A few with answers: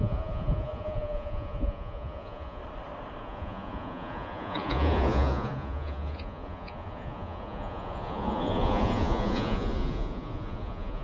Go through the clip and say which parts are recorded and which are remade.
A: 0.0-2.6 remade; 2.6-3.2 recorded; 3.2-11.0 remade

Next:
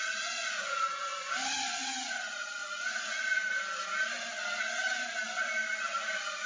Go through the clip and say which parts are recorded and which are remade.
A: 0.0-1.1 remade; 1.1-1.8 recorded; 1.8-3.4 remade; 3.4-6.5 recorded